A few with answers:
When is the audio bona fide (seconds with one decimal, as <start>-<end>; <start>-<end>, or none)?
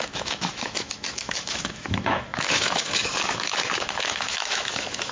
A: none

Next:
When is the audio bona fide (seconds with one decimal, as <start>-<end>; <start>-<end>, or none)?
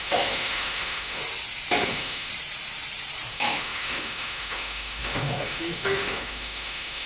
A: 1.2-1.7; 2.3-3.3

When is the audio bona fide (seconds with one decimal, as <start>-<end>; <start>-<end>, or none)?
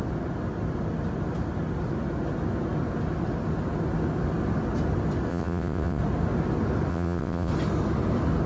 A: 0.0-5.3; 6.0-6.9; 7.5-8.5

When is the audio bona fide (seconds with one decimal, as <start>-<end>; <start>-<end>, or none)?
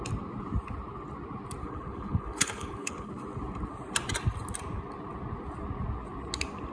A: 0.0-1.6; 3.1-6.7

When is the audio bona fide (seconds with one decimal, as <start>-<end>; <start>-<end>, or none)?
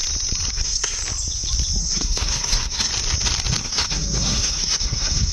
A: 0.0-0.5; 1.0-1.8; 2.9-3.6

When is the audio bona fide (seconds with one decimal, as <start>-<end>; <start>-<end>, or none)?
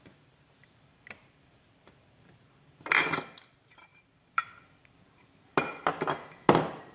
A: 0.0-0.6; 3.5-3.9; 5.4-6.9